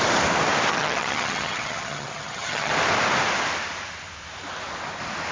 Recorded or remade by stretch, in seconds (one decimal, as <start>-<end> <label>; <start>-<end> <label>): 0.0-0.7 recorded; 0.7-2.7 remade; 2.7-5.3 recorded

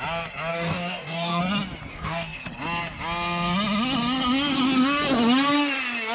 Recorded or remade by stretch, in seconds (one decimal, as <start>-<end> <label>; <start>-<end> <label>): 0.0-0.5 recorded; 0.5-1.4 remade; 1.4-1.9 recorded; 1.9-2.4 remade; 2.4-6.1 recorded

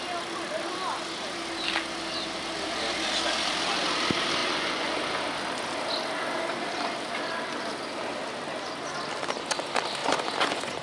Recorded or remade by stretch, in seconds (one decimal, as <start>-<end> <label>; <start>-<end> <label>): 0.0-4.4 recorded; 4.4-4.9 remade; 4.9-10.0 recorded; 10.0-10.8 remade

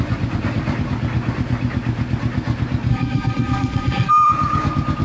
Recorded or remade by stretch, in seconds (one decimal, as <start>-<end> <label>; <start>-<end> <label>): 0.0-2.9 recorded; 2.9-4.1 remade; 4.1-5.0 recorded

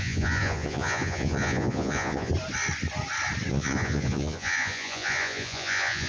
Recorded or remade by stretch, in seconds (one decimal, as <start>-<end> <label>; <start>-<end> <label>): 0.0-2.3 remade; 2.3-3.5 recorded; 3.5-6.1 remade

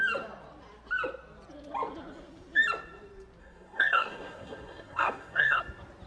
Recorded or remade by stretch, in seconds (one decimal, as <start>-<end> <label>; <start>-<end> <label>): 0.0-3.4 recorded; 3.4-5.6 remade; 5.6-6.1 recorded